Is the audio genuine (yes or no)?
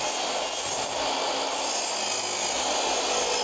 yes